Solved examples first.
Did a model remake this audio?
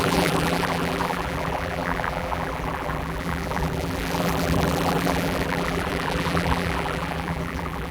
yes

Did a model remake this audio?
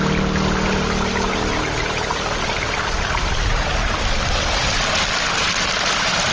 no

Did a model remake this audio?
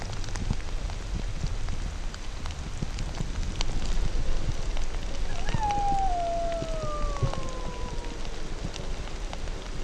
no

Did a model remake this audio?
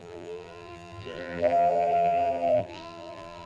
yes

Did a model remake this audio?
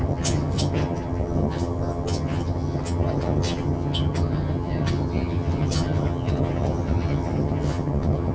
yes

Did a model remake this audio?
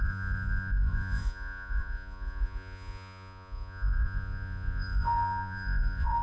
yes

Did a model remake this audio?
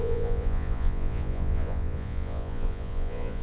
yes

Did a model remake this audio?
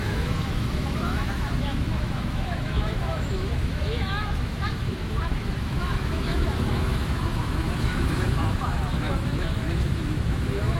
yes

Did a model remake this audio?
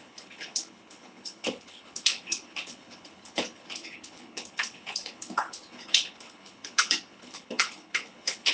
yes